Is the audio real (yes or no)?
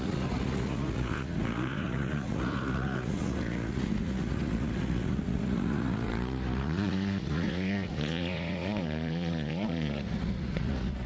no